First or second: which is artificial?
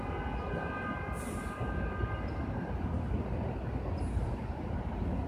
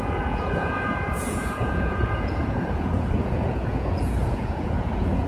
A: second